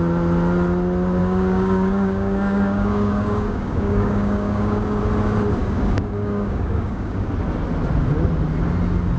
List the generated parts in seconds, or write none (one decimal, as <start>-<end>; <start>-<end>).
1.2-5.0; 5.6-7.3